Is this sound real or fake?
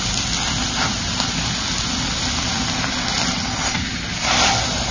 real